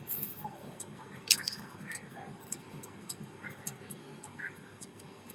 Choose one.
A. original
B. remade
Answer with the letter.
B